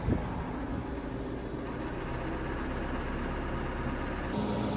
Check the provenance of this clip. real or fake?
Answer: real